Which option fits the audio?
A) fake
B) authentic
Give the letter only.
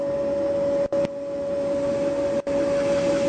B